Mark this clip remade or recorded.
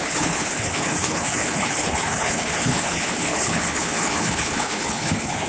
remade